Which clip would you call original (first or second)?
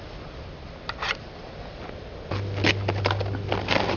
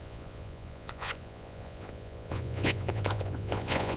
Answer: first